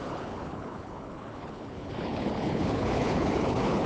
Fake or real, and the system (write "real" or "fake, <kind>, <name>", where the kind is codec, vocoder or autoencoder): fake, codec, HILCodec